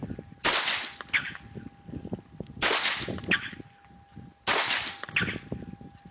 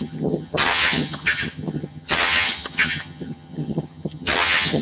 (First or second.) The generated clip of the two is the second